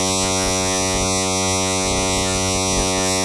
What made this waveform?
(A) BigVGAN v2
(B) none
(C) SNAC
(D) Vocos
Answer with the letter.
D